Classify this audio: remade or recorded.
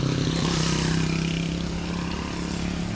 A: recorded